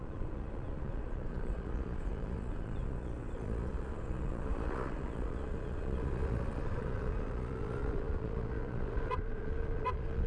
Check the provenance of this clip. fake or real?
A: fake